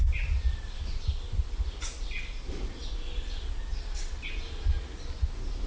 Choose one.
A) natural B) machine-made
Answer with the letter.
A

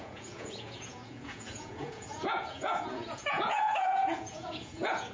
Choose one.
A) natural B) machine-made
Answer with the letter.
B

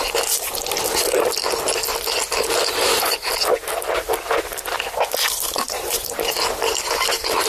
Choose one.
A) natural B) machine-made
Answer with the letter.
A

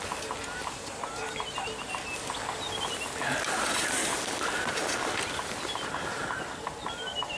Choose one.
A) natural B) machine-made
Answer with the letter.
A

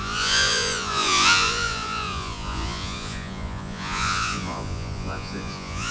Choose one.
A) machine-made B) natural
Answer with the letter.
A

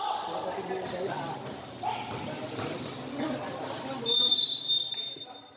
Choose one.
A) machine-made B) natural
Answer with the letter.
B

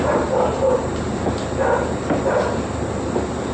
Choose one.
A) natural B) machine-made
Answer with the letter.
A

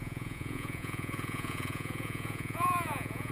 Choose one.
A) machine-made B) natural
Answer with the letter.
A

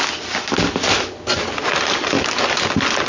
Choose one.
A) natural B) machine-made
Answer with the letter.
A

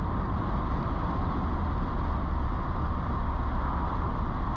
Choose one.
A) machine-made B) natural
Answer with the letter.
B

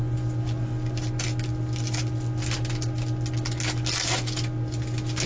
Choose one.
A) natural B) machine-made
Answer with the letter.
A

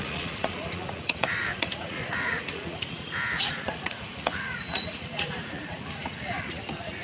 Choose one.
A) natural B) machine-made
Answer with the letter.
B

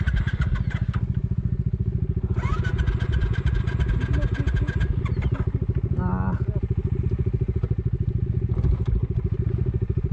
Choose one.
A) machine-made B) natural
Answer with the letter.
B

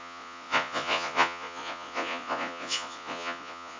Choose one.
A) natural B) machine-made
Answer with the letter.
B